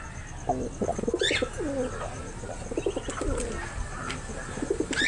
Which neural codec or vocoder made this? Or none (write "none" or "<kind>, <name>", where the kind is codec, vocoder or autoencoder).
none